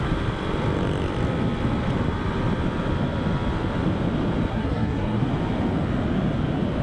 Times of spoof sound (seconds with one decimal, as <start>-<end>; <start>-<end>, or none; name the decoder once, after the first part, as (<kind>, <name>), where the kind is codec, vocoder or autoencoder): 4.5-5.3 (codec, SNAC)